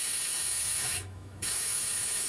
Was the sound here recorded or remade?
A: remade